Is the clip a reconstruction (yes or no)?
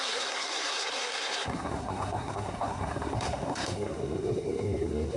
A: yes